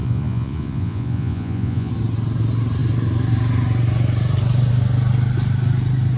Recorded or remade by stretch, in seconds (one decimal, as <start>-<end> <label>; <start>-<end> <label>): 0.0-1.9 remade; 1.9-6.2 recorded